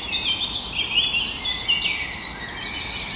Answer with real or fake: real